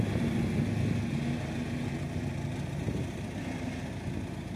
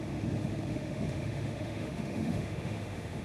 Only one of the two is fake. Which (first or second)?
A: second